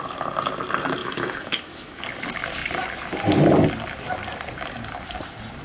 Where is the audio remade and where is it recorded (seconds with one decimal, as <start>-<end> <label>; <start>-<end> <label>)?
0.0-1.0 recorded; 1.0-2.0 remade; 2.0-5.6 recorded